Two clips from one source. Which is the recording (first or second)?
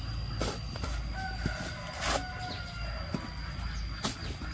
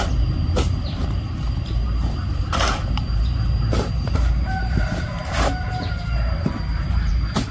first